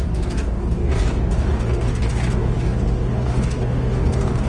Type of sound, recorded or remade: remade